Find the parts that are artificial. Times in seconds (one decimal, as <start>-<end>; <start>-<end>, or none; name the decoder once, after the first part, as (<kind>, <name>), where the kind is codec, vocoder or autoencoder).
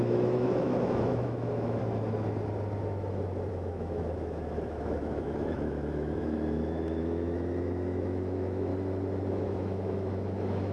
0.0-1.8 (autoencoder, DAC-VAE); 3.5-8.7; 9.3-10.7